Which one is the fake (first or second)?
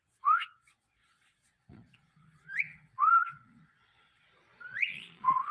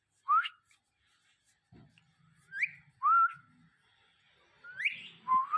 first